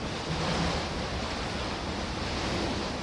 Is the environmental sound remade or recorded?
recorded